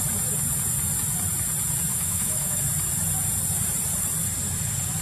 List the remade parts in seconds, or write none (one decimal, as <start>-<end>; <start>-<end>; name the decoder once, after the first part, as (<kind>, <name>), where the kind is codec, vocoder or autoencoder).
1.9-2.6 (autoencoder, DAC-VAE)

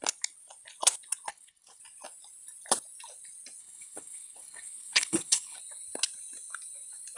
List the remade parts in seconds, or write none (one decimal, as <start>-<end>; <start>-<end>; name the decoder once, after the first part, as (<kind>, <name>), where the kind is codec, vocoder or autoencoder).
1.3-1.8 (codec, HILCodec); 3.6-5.6

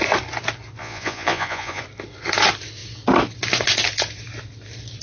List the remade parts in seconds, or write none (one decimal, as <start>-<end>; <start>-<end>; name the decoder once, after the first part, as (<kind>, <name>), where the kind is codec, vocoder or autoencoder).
0.8-1.8 (vocoder, Vocos)

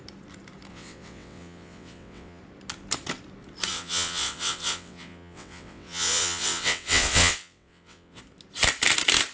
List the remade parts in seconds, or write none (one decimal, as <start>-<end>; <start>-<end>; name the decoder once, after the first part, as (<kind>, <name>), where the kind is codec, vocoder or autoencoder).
0.7-2.4 (vocoder, WaveNeXt); 3.7-8.2

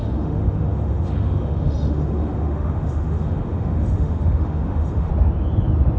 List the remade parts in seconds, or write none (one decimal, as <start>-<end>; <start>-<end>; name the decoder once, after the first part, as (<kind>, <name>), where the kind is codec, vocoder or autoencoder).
0.0-5.1 (autoencoder, DAC-VAE)

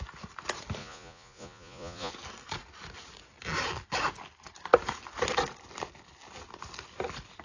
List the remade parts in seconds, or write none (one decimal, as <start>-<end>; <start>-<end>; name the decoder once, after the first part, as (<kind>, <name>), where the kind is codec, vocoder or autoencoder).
0.8-2.1 (vocoder, Vocos)